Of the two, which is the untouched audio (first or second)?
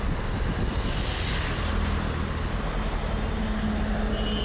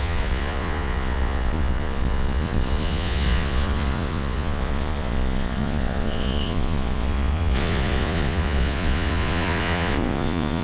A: first